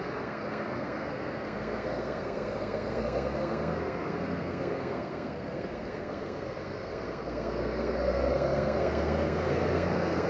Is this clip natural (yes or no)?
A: no